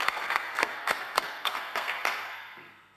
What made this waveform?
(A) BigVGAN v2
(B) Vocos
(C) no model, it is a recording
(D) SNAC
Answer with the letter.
D